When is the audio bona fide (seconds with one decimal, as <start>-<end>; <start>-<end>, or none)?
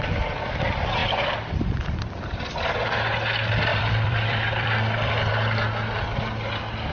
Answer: 0.0-3.7; 5.3-6.9